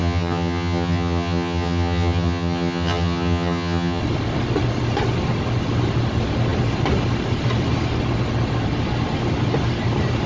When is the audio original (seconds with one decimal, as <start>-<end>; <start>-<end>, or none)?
4.0-10.3